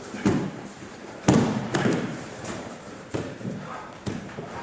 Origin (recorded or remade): remade